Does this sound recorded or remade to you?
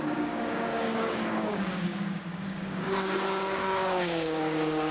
remade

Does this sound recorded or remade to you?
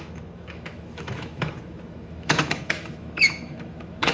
remade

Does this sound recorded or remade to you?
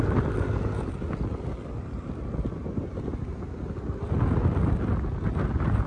recorded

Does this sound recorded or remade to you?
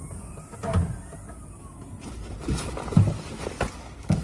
recorded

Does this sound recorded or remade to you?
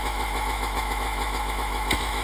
remade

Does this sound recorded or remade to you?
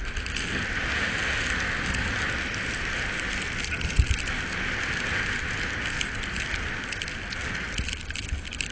recorded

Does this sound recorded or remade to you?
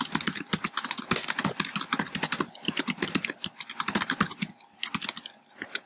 recorded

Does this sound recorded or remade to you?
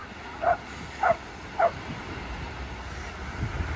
recorded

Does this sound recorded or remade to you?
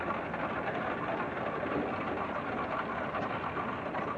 recorded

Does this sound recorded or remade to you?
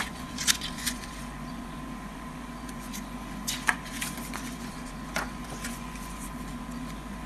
remade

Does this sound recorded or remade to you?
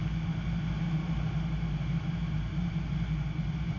recorded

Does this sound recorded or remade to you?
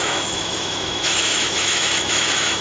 remade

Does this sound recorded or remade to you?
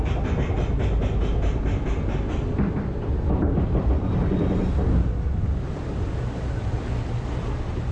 recorded